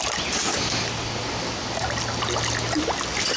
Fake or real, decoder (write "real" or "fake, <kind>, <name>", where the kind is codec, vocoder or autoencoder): real